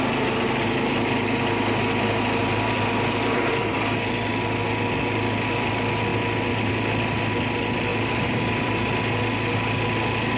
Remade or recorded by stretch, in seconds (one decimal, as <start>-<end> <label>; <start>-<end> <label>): 0.0-2.4 recorded; 2.4-3.7 remade; 3.7-7.9 recorded; 7.9-9.0 remade; 9.0-10.4 recorded